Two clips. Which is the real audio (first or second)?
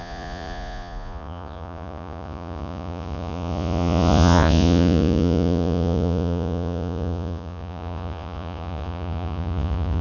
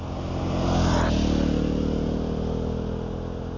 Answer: second